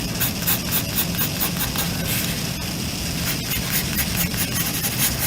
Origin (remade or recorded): recorded